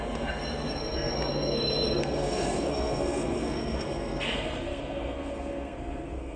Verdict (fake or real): fake